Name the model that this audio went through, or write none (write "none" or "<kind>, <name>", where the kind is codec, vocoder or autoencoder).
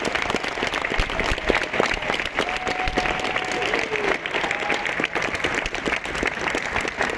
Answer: none